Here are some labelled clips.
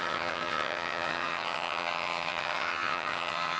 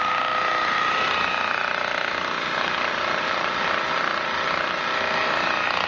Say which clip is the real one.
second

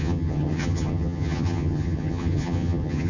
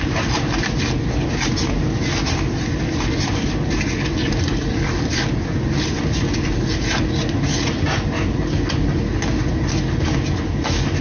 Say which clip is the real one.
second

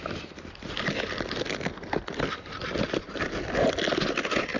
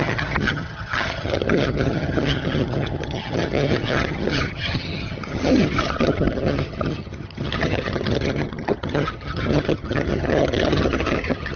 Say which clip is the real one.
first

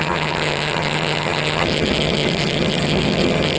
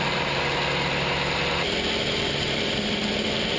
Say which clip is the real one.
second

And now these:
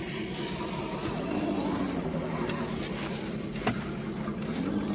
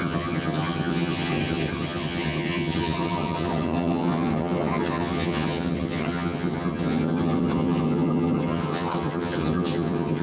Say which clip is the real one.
first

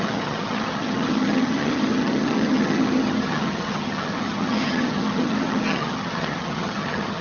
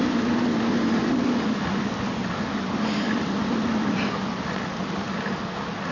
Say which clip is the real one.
second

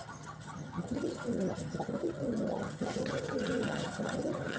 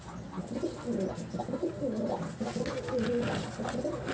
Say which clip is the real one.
second